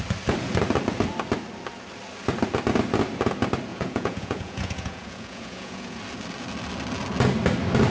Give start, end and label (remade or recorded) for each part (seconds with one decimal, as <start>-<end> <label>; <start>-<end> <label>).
0.0-3.7 recorded; 3.7-6.0 remade; 6.0-7.9 recorded